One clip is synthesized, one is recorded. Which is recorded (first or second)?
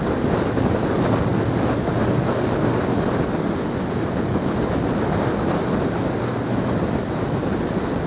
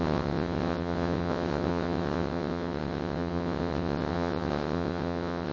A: first